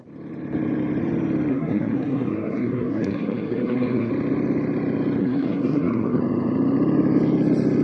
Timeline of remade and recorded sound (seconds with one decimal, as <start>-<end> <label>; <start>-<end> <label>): 0.0-1.5 recorded; 1.5-4.1 remade; 4.1-5.2 recorded; 5.2-6.2 remade; 6.2-7.8 recorded